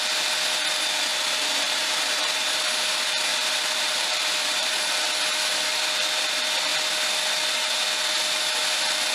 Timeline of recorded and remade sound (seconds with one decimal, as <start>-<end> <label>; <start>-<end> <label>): 0.0-1.1 recorded; 1.1-2.6 remade; 2.6-3.3 recorded; 3.3-4.9 remade; 4.9-9.1 recorded